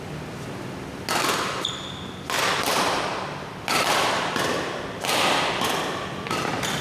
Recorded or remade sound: recorded